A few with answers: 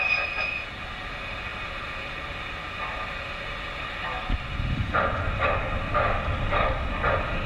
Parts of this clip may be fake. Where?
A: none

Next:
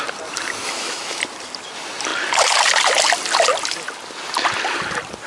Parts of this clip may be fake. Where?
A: 0.6-1.2 (autoencoder, DAC-VAE)

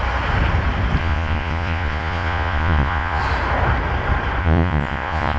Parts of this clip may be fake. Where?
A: 1.0-3.2 (vocoder, Vocos); 4.4-5.4

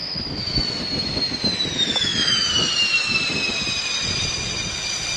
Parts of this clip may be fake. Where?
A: 0.0-0.8 (autoencoder, DAC-VAE); 1.9-2.5

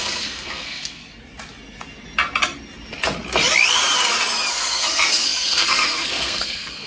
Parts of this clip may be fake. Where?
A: 0.0-1.0 (codec, SNAC); 4.5-6.9